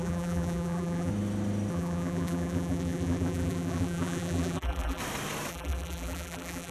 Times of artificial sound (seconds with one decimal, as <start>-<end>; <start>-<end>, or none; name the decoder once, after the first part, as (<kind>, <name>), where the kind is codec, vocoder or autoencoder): 0.0-1.1 (vocoder, BigVGAN v2); 1.7-5.0; 5.5-6.7